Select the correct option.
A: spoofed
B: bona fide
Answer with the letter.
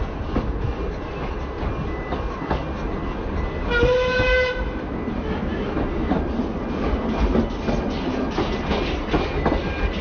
B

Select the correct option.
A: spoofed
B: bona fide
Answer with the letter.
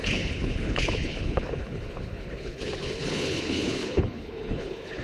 A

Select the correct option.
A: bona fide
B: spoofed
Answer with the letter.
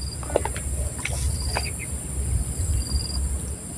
A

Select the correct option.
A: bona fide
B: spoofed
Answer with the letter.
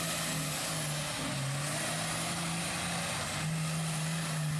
A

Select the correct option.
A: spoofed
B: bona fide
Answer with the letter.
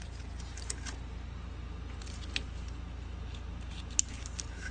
B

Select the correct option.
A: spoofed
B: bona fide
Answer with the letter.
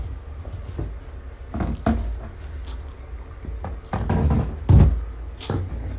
B